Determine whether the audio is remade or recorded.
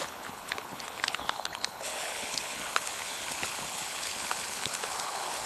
remade